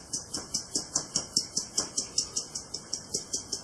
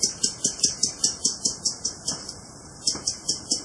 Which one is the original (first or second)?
first